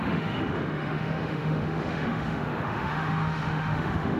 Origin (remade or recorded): remade